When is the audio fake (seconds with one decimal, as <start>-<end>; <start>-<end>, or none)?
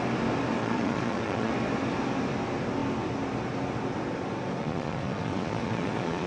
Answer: 0.6-1.5; 4.6-6.3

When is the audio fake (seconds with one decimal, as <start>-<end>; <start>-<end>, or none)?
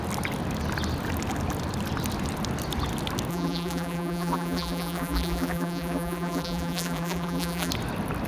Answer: 3.3-7.7